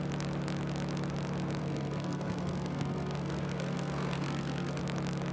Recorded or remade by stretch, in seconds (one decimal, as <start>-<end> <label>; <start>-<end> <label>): 0.0-1.6 recorded; 1.6-4.8 remade; 4.8-5.3 recorded